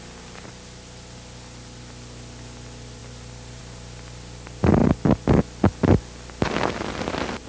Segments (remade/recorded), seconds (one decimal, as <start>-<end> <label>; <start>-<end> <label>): 0.0-7.5 recorded